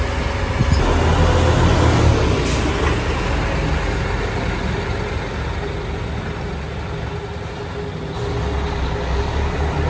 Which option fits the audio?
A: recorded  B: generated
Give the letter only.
A